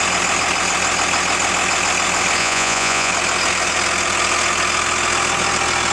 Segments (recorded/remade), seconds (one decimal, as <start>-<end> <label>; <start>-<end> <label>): 0.0-2.4 recorded; 2.4-3.1 remade; 3.1-5.9 recorded